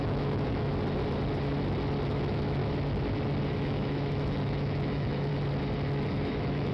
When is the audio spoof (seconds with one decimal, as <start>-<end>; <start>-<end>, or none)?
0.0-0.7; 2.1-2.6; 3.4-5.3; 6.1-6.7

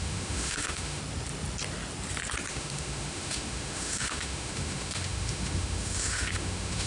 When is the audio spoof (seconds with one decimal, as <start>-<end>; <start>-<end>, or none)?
0.0-1.0; 2.5-6.9

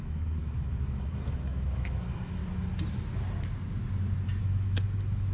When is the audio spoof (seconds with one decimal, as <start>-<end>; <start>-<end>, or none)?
0.0-2.4; 4.4-5.3

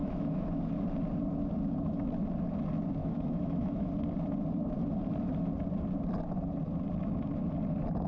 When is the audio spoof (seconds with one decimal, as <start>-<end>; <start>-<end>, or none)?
0.0-0.6; 3.0-3.9

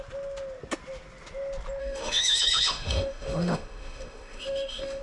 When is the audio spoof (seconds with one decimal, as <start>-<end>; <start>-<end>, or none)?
1.8-5.0

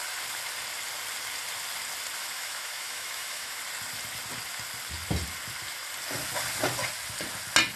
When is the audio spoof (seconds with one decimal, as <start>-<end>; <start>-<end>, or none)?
2.2-3.6

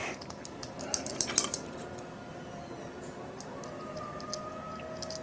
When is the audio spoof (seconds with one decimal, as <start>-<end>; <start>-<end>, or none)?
none